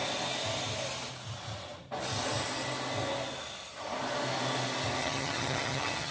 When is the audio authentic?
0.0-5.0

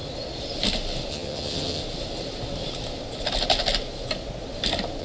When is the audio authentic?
0.0-1.1; 1.8-5.0

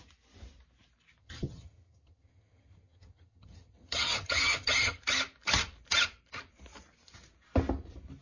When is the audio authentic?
0.0-1.2; 5.0-8.2

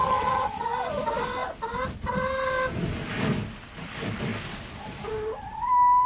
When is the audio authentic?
0.6-6.1

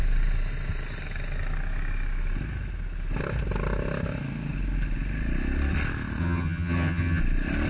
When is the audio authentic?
0.0-6.2; 7.2-7.7